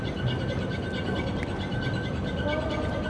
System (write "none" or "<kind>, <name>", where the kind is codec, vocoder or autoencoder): none